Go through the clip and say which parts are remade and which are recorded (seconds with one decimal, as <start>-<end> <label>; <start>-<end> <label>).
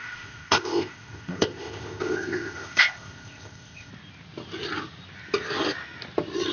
0.0-3.9 remade; 3.9-6.5 recorded